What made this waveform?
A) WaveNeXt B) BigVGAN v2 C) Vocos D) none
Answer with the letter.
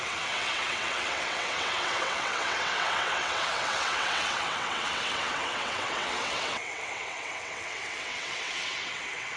A